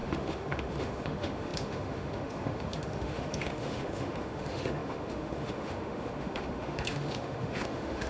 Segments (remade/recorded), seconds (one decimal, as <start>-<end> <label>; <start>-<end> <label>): 0.0-8.1 remade